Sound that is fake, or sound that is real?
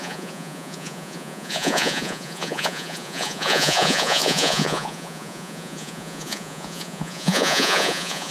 fake